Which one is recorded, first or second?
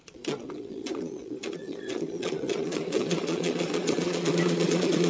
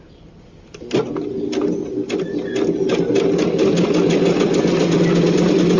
second